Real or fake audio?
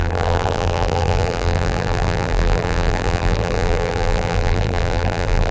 fake